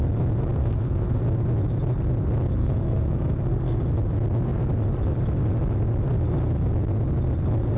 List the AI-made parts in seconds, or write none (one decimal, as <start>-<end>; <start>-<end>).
0.6-1.2; 2.6-3.8

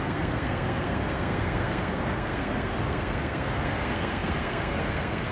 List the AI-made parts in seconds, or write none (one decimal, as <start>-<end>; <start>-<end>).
0.0-5.3

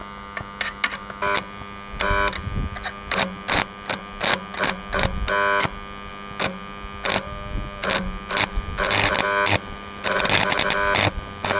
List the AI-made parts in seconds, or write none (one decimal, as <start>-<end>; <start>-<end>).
none

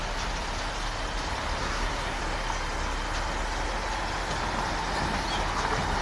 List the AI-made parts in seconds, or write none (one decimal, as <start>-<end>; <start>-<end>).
1.6-2.2